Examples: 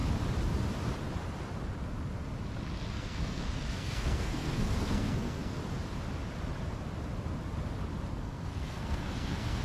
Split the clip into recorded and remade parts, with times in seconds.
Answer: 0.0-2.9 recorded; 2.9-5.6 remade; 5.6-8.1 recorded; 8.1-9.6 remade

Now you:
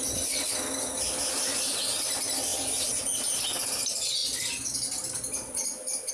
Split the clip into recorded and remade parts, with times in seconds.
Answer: 0.0-2.5 recorded; 2.5-3.4 remade; 3.4-6.1 recorded

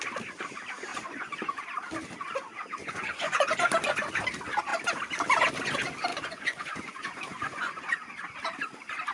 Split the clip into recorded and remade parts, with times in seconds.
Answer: 0.0-0.9 recorded; 0.9-1.6 remade; 1.6-2.8 recorded; 2.8-3.5 remade; 3.5-6.1 recorded; 6.1-8.1 remade; 8.1-9.1 recorded

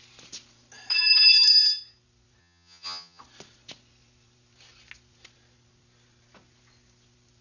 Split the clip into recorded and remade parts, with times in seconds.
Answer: 0.0-2.4 recorded; 2.4-3.2 remade; 3.2-7.4 recorded

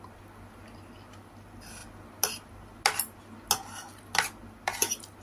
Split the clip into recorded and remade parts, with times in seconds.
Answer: 0.0-5.2 recorded

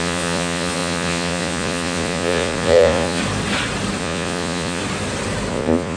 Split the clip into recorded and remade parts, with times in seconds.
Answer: 0.0-3.2 remade; 3.2-4.0 recorded; 4.0-4.8 remade; 4.8-5.5 recorded; 5.5-6.0 remade

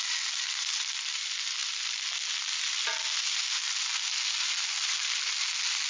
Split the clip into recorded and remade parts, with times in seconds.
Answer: 0.0-5.9 recorded

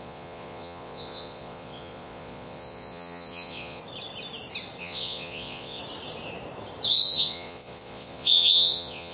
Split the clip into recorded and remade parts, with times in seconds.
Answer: 0.0-3.8 remade; 3.8-4.8 recorded; 4.8-5.8 remade; 5.8-6.9 recorded; 6.9-9.1 remade